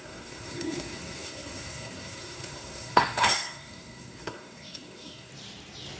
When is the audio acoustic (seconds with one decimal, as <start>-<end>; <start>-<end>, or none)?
5.3-6.0